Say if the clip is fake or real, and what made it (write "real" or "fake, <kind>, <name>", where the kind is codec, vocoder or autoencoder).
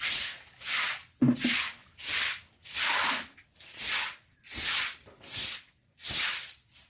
real